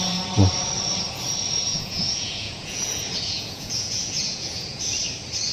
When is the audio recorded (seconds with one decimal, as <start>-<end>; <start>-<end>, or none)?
0.0-1.7; 4.8-5.5